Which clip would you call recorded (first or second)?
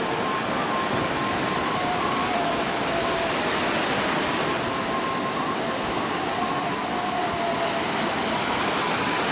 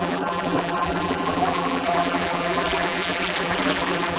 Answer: first